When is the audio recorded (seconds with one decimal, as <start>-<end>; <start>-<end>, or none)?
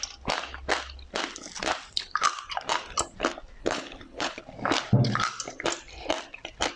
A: 0.0-3.6; 4.4-6.8